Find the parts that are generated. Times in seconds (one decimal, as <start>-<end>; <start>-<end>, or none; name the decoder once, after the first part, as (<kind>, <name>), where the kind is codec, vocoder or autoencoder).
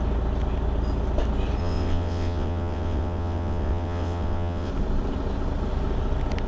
1.6-4.7 (vocoder, WaveNeXt)